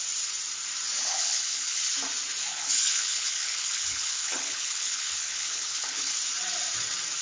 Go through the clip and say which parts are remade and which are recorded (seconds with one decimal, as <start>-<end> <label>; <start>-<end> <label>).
0.0-1.0 recorded; 1.0-1.8 remade; 1.8-2.5 recorded; 2.5-6.1 remade; 6.1-7.2 recorded